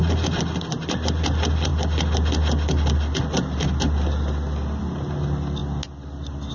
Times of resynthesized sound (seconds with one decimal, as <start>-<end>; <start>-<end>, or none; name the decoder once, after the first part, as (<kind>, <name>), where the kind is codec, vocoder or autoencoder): none